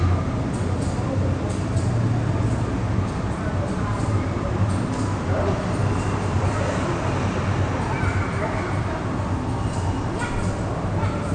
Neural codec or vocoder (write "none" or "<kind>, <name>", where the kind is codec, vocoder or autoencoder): none